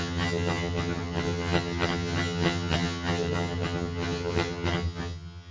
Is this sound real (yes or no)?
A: no